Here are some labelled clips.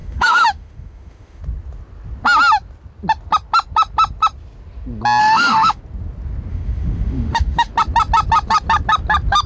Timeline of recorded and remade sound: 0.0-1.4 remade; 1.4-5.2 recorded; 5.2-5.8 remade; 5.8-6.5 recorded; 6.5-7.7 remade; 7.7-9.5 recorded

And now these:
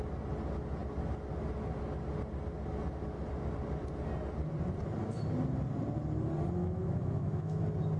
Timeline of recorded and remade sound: 0.0-6.6 recorded; 6.6-7.6 remade; 7.6-8.0 recorded

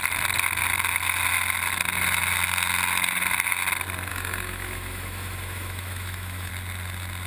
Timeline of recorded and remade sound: 0.0-4.1 recorded; 4.1-6.5 remade; 6.5-7.3 recorded

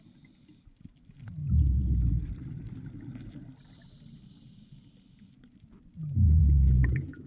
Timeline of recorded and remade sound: 0.0-1.4 recorded; 1.4-2.2 remade; 2.2-6.4 recorded; 6.4-7.3 remade